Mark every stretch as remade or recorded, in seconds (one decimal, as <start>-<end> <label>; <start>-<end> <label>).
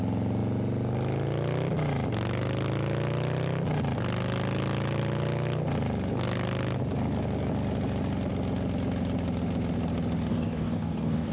0.0-10.3 recorded; 10.3-11.3 remade